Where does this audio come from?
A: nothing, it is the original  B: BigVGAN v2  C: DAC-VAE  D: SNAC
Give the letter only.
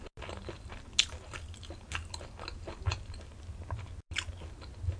A